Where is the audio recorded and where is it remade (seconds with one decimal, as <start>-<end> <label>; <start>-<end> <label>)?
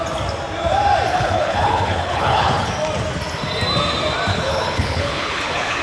0.0-1.1 recorded; 1.1-2.7 remade; 2.7-4.3 recorded; 4.3-5.8 remade